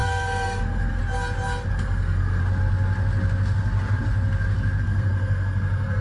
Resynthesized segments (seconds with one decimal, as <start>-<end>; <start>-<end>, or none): 0.0-1.0; 1.7-2.4; 4.8-6.0